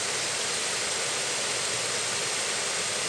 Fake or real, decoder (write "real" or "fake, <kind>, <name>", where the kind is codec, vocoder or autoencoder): real